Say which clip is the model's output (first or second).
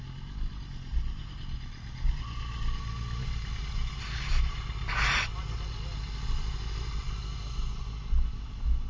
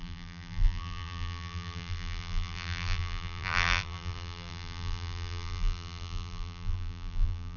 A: second